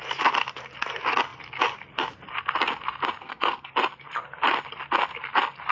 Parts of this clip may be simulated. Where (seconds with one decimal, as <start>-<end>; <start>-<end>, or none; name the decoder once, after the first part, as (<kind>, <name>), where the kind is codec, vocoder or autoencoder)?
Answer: 3.2-3.7 (codec, SNAC)